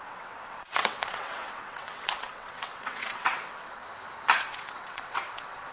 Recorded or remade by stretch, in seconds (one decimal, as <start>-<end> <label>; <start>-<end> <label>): 0.0-3.8 remade; 3.8-4.4 recorded; 4.4-5.7 remade